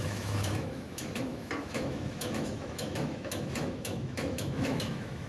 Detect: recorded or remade remade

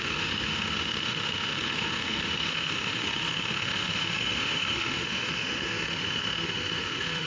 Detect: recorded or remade remade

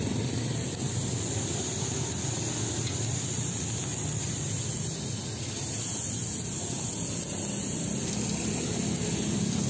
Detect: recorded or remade recorded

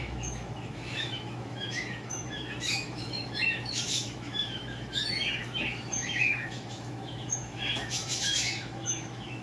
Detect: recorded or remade remade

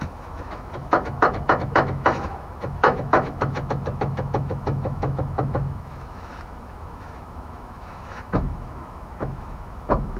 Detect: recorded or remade remade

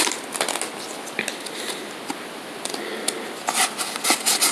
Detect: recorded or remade recorded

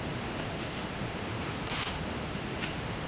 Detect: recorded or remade remade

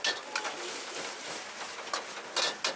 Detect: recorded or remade recorded